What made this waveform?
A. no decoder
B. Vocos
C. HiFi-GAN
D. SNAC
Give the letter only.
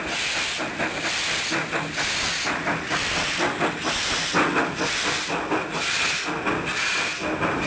A